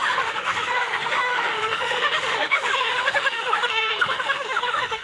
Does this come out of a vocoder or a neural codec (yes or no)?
yes